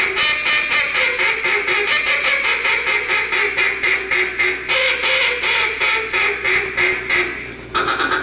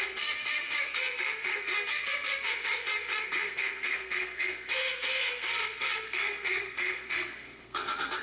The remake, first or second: second